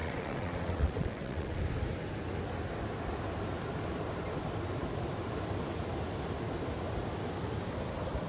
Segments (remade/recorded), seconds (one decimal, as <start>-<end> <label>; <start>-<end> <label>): 0.0-1.6 remade; 1.6-8.3 recorded